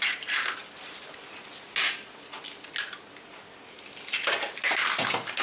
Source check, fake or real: real